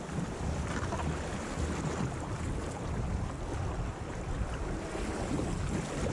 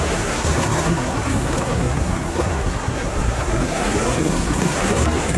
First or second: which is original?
first